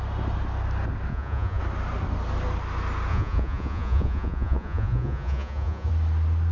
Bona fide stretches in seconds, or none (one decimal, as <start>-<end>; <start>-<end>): 0.0-1.1; 1.6-3.1; 5.9-6.5